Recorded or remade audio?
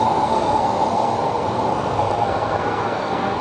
remade